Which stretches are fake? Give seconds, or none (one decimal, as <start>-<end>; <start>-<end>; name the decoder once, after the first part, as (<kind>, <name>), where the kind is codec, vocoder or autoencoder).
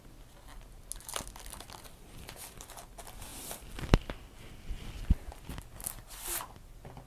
none